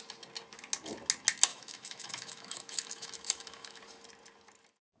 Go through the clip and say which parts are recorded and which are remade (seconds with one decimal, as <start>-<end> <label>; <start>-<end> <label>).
0.0-1.5 recorded; 1.5-3.8 remade; 3.8-5.0 recorded